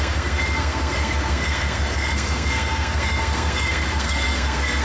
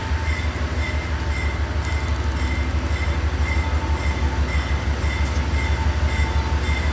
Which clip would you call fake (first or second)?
first